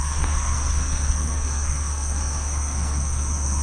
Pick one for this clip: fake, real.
fake